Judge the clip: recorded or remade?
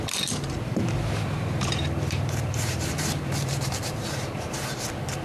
remade